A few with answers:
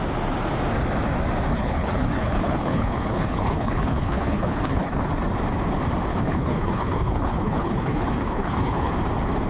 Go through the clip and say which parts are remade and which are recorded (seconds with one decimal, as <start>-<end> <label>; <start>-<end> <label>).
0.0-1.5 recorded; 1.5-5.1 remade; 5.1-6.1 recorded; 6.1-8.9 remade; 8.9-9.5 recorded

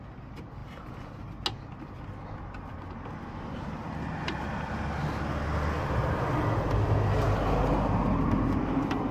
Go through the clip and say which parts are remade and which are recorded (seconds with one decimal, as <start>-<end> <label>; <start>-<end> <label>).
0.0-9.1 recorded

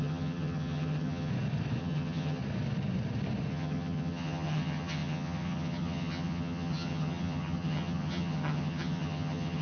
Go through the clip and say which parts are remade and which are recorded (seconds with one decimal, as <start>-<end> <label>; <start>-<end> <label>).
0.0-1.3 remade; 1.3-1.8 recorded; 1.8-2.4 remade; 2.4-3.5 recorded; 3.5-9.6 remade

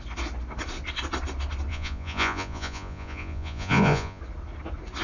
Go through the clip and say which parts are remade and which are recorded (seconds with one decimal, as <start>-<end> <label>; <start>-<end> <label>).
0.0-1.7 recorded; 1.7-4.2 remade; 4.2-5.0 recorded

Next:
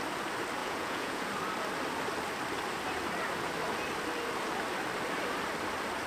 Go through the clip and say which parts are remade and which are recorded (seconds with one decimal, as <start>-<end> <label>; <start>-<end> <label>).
0.0-0.6 recorded; 0.6-1.3 remade; 1.3-6.1 recorded

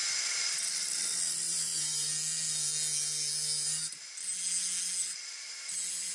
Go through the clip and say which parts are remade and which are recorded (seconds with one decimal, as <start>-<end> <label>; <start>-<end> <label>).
0.0-2.1 remade; 2.1-6.1 recorded

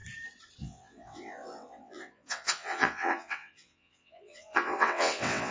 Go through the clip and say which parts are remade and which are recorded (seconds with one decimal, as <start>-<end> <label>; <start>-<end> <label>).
0.0-0.6 recorded; 0.6-5.5 remade

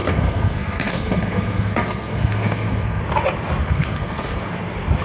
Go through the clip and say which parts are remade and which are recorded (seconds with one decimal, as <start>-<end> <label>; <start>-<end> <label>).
0.0-3.0 remade; 3.0-3.6 recorded; 3.6-4.4 remade; 4.4-5.0 recorded